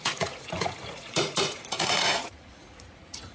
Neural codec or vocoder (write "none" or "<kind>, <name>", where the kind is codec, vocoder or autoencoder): vocoder, Vocos